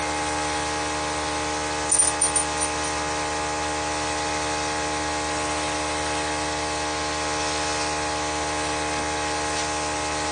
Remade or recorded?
recorded